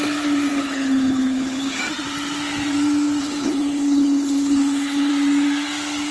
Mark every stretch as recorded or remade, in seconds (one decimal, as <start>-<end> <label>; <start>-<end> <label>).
0.0-0.5 recorded; 0.5-1.8 remade; 1.8-3.2 recorded; 3.2-5.1 remade; 5.1-6.1 recorded